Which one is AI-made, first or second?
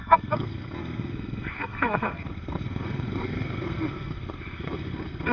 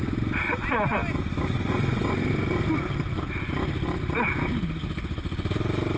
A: first